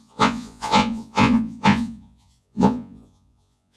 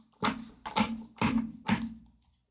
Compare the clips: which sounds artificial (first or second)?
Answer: first